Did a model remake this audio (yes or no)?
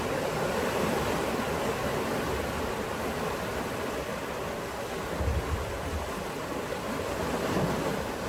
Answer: no